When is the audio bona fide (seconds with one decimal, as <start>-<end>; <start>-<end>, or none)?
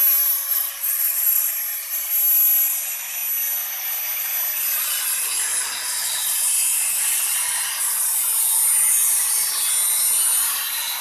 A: 0.0-0.5; 1.5-11.0